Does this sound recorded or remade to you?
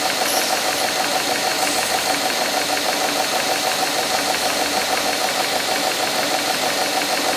recorded